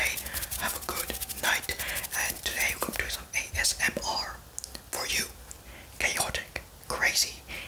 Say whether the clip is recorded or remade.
recorded